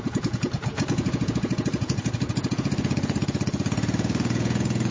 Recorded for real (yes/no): no